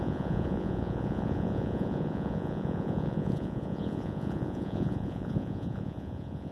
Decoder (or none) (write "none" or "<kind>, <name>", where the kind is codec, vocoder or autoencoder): vocoder, Vocos